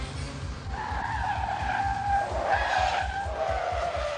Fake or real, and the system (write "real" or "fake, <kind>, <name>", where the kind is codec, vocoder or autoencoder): real